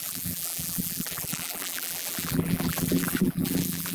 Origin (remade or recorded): remade